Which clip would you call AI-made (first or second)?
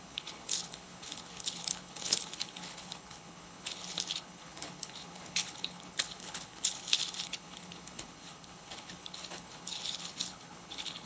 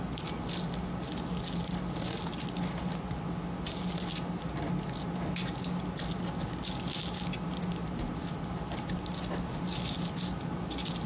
first